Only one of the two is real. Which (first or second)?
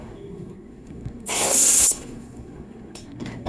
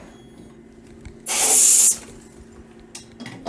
second